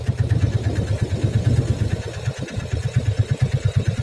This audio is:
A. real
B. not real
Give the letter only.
A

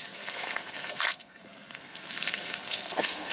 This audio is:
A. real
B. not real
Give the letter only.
B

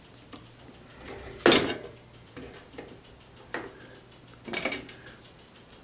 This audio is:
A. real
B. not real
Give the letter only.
A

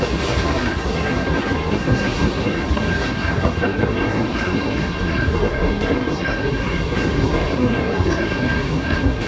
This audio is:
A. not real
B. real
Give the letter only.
A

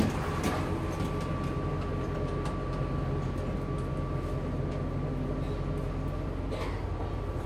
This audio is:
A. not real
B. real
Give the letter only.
B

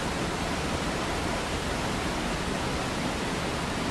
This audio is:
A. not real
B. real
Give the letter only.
B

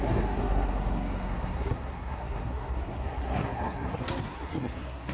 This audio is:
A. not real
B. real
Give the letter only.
A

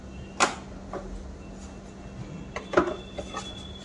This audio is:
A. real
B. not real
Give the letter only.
A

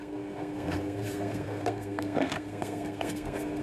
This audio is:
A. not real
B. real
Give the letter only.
A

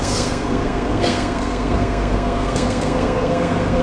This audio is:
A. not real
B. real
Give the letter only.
A